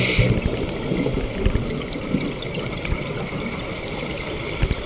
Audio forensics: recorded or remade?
recorded